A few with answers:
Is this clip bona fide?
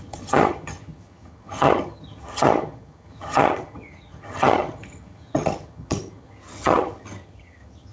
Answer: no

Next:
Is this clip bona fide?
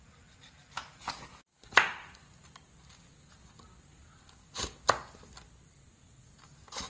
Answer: yes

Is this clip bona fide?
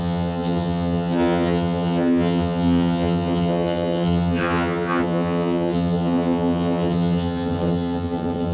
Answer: no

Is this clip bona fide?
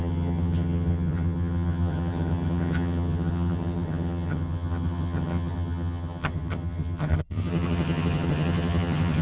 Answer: no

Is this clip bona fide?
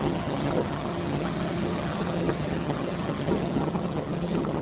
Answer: no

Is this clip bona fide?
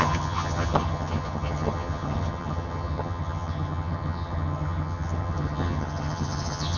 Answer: no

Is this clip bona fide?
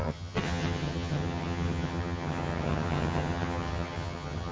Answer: no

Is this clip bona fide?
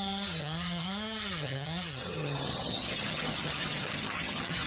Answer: no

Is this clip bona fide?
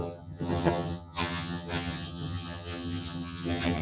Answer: no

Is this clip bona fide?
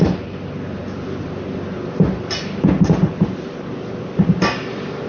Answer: yes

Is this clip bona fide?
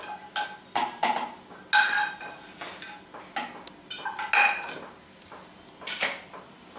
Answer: yes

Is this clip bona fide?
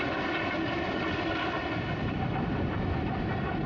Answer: yes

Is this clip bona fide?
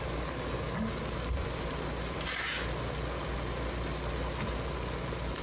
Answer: yes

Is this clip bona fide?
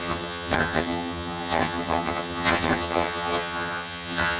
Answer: no